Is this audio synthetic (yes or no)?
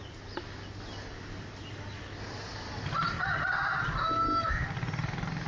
no